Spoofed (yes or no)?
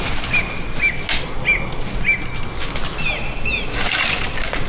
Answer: no